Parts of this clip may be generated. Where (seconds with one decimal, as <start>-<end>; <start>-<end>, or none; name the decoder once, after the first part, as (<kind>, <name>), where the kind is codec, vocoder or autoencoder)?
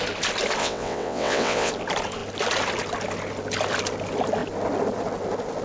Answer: 0.6-1.7 (vocoder, WaveNeXt)